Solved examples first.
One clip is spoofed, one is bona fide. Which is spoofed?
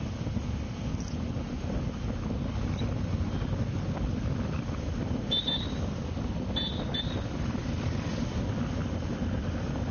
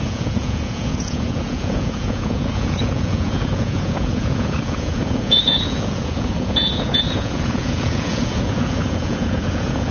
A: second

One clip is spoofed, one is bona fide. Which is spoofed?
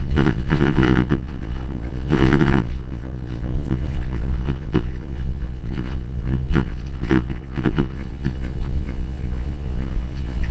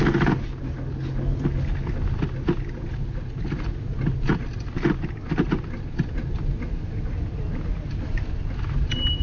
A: first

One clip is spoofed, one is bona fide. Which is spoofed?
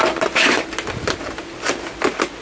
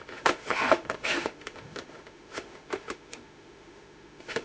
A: second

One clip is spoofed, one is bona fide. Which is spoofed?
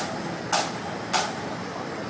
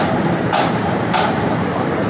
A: second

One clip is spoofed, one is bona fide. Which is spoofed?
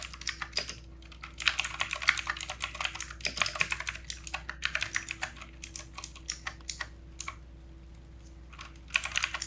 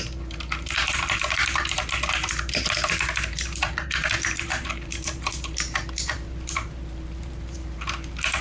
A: second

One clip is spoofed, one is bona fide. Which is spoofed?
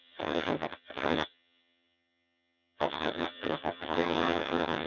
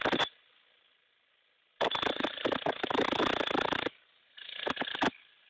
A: first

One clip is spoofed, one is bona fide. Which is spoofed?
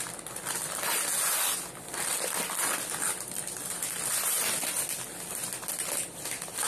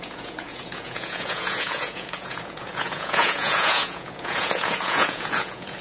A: second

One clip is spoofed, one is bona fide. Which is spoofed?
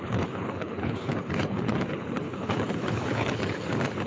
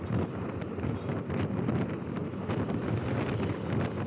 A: first